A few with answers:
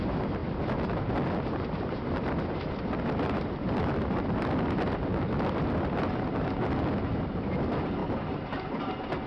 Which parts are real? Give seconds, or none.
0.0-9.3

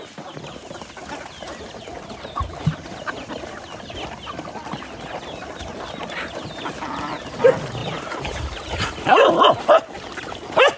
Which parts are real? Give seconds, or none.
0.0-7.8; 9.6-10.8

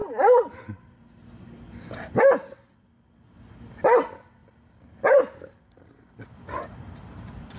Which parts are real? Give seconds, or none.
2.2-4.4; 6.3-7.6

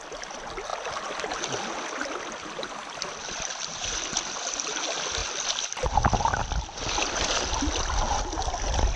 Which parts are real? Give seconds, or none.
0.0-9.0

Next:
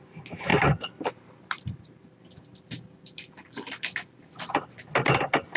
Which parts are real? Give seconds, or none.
0.0-5.6

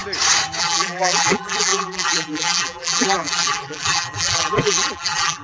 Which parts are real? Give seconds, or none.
0.0-0.6